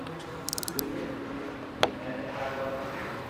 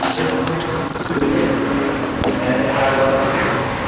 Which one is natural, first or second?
second